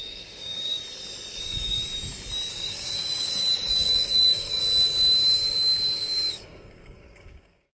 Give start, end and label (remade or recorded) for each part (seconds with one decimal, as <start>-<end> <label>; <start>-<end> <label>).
0.0-0.8 remade; 0.8-1.4 recorded; 1.4-1.8 remade; 1.8-2.5 recorded; 2.5-4.6 remade; 4.6-6.3 recorded; 6.3-7.8 remade